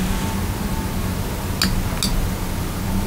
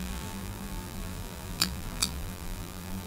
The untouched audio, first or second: first